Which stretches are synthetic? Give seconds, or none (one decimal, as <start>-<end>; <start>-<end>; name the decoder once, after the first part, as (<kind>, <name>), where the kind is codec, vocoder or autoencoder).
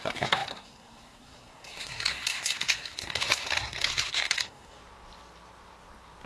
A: 0.0-4.8 (codec, SNAC)